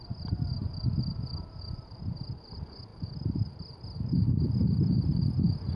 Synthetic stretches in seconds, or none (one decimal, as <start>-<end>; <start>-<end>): none